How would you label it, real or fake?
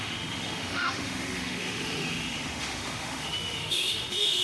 fake